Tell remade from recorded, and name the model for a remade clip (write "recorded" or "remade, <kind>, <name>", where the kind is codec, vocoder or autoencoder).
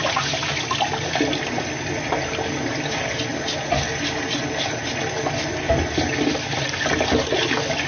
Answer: recorded